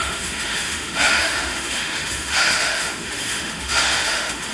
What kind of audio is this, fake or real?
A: fake